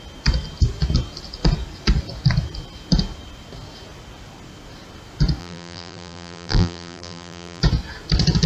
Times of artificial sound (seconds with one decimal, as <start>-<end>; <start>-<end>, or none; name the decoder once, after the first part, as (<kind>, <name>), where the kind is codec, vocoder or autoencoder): 5.4-7.6 (vocoder, BigVGAN v2)